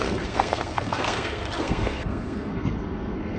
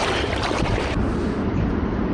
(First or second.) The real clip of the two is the second